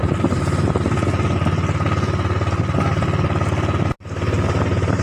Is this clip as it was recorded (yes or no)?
yes